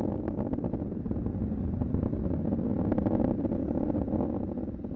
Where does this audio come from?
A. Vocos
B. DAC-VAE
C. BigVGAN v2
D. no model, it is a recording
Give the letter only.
D